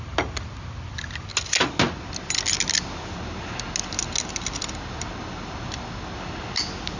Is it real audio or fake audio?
real